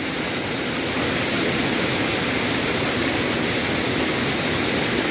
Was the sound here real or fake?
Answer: real